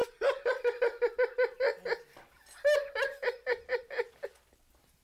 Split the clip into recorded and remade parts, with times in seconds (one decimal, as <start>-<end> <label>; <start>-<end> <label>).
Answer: 0.0-1.1 remade; 1.1-1.7 recorded; 1.7-4.1 remade; 4.1-5.0 recorded